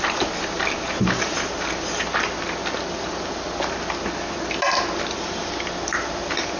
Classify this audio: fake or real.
real